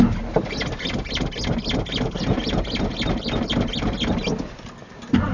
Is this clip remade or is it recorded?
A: recorded